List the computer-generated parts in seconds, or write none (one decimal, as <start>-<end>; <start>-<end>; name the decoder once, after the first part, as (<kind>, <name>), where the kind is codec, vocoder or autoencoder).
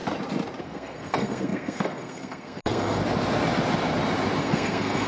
0.6-3.0 (codec, SNAC); 4.4-5.1